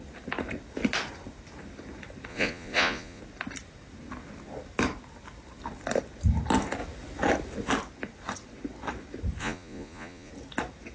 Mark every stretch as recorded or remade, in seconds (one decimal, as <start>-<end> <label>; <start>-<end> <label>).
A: 0.0-2.3 recorded; 2.3-3.2 remade; 3.2-9.4 recorded; 9.4-10.3 remade; 10.3-10.9 recorded

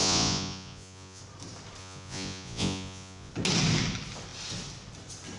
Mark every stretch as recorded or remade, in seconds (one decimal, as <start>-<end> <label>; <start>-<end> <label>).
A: 0.0-1.2 remade; 1.2-1.8 recorded; 1.8-3.3 remade; 3.3-5.4 recorded

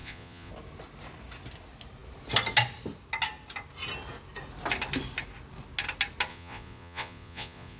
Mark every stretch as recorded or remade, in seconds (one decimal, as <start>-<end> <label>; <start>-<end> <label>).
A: 0.0-0.5 remade; 0.5-6.3 recorded; 6.3-7.8 remade